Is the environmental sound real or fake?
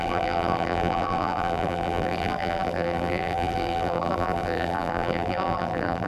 fake